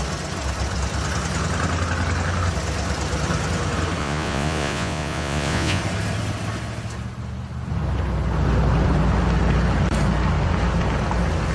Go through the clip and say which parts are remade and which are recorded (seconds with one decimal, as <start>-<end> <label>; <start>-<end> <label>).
0.0-4.0 recorded; 4.0-5.8 remade; 5.8-11.5 recorded